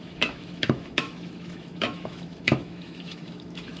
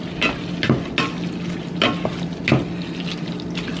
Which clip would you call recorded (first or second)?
second